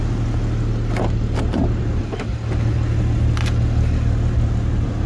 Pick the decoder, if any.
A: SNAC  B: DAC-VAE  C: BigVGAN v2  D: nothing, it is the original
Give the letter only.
D